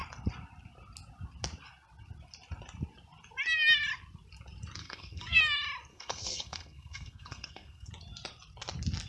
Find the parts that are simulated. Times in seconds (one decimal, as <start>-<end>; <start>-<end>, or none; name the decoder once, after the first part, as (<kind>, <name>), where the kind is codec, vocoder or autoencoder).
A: 4.8-5.4 (codec, SNAC); 5.9-7.9